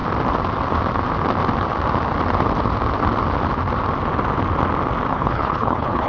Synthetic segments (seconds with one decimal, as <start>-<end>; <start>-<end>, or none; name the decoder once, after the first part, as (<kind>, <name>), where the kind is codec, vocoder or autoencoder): 5.1-6.1 (codec, HILCodec)